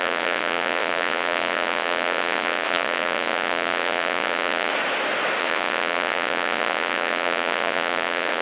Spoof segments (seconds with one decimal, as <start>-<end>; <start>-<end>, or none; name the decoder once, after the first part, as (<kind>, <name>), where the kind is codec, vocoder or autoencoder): 0.0-4.7 (vocoder, Vocos); 5.4-8.4